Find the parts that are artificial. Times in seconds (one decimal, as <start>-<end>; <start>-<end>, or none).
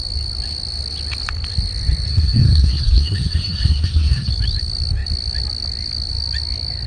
2.1-4.3